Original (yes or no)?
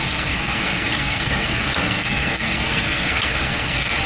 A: no